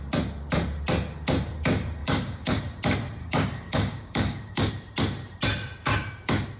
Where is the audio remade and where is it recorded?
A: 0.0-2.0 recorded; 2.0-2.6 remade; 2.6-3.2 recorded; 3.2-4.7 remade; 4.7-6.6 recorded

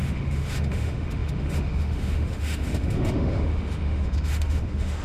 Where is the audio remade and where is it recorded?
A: 0.0-5.0 remade

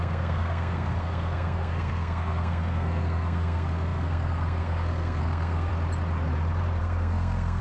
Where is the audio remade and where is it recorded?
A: 0.0-5.7 remade; 5.7-6.8 recorded; 6.8-7.6 remade

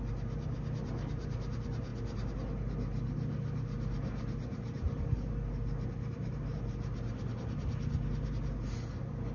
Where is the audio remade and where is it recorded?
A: 0.0-9.3 recorded

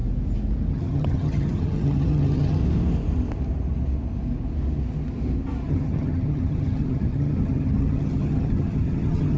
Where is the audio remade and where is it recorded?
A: 0.0-0.7 recorded; 0.7-2.6 remade; 2.6-5.7 recorded; 5.7-9.4 remade

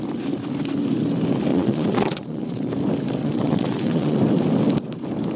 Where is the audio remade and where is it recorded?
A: 0.0-1.5 recorded; 1.5-2.7 remade; 2.7-3.2 recorded; 3.2-4.2 remade; 4.2-5.4 recorded

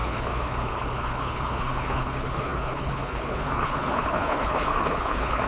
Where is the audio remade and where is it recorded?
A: 0.0-5.5 remade